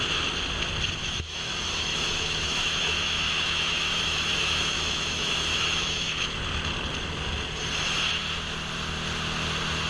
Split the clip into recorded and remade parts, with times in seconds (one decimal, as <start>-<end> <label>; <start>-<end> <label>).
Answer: 0.0-1.0 recorded; 1.0-6.2 remade; 6.2-9.9 recorded